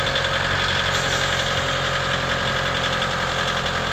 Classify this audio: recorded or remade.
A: recorded